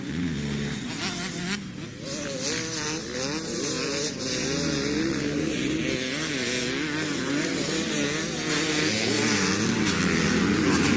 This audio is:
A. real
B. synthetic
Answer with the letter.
A